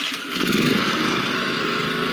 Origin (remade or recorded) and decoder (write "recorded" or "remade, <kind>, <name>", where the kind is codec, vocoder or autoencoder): remade, codec, SNAC